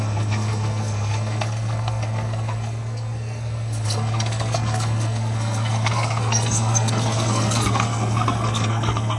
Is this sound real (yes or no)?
no